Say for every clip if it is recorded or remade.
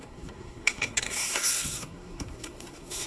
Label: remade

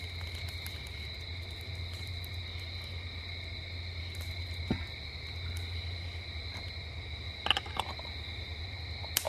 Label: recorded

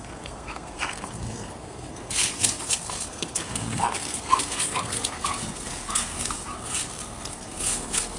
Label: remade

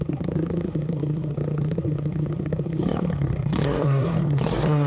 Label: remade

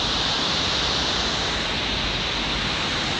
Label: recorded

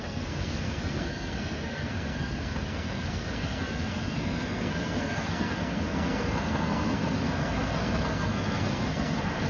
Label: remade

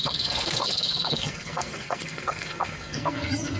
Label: remade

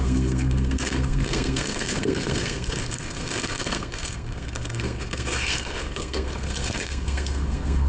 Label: remade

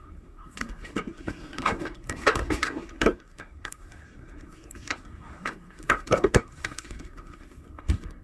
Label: remade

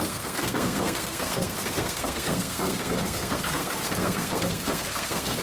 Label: remade